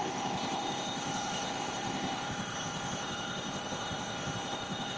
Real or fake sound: fake